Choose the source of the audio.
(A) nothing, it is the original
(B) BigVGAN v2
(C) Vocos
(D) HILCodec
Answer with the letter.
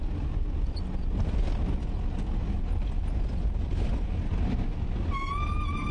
A